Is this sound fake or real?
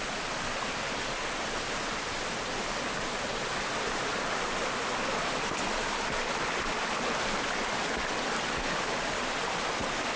real